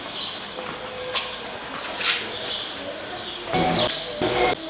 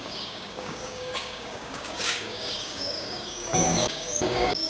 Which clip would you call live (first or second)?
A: first